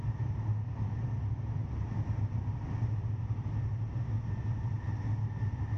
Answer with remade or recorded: recorded